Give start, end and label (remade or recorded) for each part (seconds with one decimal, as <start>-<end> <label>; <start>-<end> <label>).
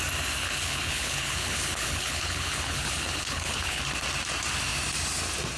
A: 0.0-0.4 recorded; 0.4-3.8 remade; 3.8-5.6 recorded